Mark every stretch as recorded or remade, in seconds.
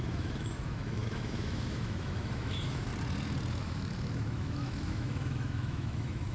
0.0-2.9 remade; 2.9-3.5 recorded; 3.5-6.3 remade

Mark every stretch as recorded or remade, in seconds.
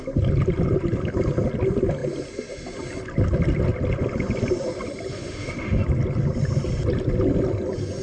0.0-5.1 recorded; 5.1-5.8 remade; 5.8-8.0 recorded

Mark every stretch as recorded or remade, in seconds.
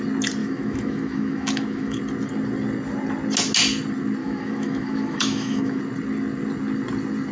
0.0-0.4 recorded; 0.4-2.0 remade; 2.0-4.2 recorded; 4.2-5.8 remade; 5.8-7.3 recorded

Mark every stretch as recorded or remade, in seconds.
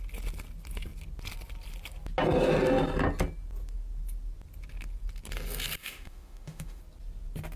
0.0-5.8 recorded; 5.8-6.8 remade; 6.8-7.6 recorded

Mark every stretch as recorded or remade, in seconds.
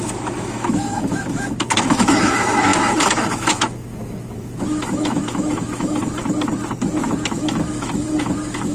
0.0-6.2 remade; 6.2-7.3 recorded; 7.3-8.7 remade